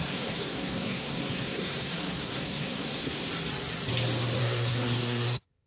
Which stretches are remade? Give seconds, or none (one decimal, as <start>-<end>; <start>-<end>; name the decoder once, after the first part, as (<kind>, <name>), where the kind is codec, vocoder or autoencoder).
0.0-3.3 (codec, SNAC); 4.4-5.7